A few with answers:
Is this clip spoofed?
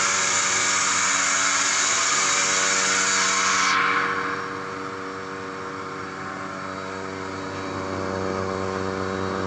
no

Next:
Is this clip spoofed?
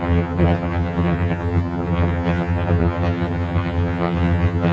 yes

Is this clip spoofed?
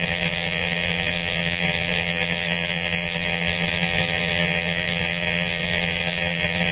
yes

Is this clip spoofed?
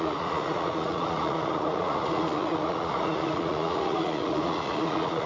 yes